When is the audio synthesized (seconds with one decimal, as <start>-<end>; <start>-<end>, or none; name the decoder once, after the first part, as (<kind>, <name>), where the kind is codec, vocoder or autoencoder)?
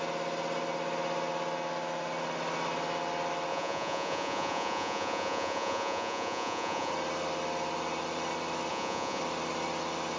3.5-6.9 (vocoder, Vocos); 8.7-9.2